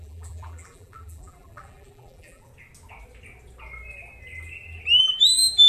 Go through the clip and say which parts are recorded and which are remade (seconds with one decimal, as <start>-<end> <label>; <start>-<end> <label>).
0.0-2.5 remade; 2.5-5.0 recorded; 5.0-5.7 remade